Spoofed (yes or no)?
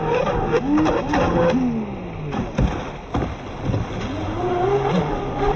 no